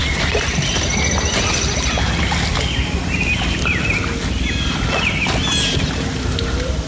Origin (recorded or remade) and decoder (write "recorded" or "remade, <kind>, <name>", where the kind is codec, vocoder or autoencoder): recorded